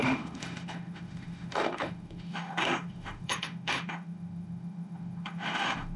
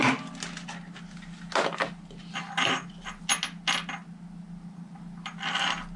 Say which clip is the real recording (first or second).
second